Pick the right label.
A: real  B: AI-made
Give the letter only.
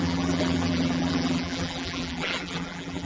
B